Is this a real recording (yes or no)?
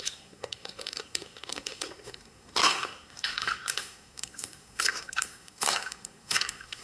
no